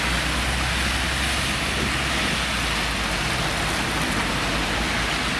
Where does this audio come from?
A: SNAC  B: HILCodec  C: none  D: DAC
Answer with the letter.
C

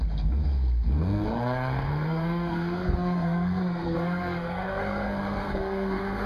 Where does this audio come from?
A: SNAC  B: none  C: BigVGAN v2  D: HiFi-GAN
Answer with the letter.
A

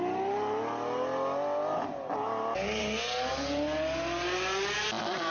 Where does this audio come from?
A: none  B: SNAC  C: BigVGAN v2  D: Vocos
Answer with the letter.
A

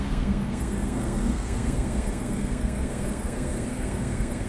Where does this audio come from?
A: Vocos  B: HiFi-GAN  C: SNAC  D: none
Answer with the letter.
C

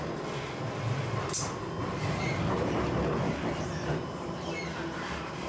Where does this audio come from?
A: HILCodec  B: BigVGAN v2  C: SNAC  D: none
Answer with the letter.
D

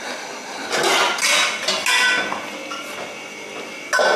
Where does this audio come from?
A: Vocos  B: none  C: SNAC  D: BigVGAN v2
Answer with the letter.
B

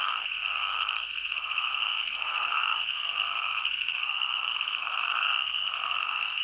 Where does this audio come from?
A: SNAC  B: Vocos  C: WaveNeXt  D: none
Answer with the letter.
A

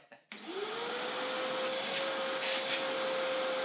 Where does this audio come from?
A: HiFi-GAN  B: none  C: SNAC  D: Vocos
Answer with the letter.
B